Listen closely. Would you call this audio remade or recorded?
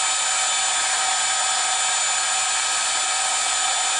recorded